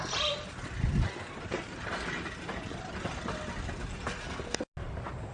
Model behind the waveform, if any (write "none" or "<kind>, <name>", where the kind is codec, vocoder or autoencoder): none